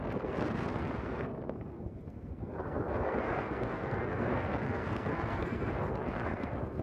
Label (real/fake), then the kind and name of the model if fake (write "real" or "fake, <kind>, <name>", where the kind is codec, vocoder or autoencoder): fake, codec, SNAC